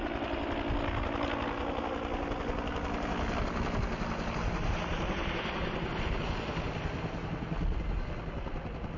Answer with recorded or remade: recorded